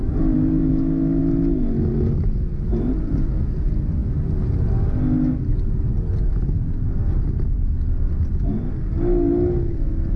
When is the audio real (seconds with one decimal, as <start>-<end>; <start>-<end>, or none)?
0.7-2.7; 3.3-10.2